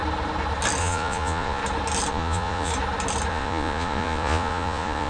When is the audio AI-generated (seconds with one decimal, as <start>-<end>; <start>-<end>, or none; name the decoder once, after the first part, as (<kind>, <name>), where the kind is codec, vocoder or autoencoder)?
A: 0.8-1.6 (vocoder, Vocos); 2.1-2.7; 3.3-5.1